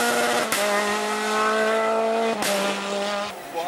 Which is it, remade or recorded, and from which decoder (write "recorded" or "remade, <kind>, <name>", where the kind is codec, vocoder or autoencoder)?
recorded